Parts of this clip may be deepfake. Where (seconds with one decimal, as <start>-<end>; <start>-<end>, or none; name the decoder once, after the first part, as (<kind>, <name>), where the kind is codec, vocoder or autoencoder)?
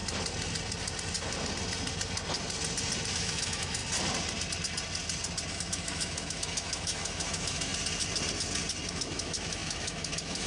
3.1-3.8 (autoencoder, DAC-VAE); 5.5-7.7; 8.9-10.5